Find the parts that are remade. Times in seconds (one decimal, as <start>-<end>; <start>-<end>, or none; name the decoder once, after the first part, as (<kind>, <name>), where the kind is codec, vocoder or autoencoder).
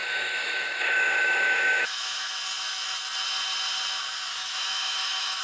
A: 0.0-2.3 (autoencoder, DAC-VAE); 4.3-5.4